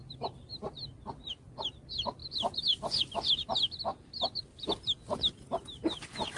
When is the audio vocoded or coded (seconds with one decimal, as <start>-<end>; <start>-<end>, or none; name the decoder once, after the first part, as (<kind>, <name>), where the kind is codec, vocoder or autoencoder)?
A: 0.0-0.6 (vocoder, BigVGAN v2)